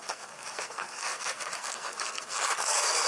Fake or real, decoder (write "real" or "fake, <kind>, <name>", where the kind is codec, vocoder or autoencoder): fake, codec, SNAC